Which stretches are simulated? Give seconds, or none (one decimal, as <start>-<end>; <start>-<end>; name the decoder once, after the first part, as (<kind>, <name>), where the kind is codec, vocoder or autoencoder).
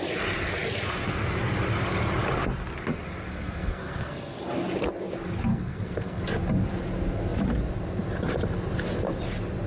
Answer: 3.3-4.4 (codec, SNAC); 5.5-6.2